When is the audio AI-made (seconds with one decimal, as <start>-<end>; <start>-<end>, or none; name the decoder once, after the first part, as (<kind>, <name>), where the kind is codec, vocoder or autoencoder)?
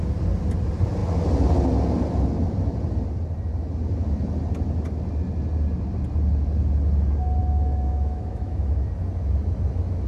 7.4-8.9 (autoencoder, DAC-VAE)